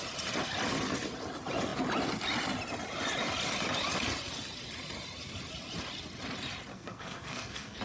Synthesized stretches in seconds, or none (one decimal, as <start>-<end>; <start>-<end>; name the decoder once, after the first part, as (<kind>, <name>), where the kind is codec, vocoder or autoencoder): 6.7-7.8 (codec, SNAC)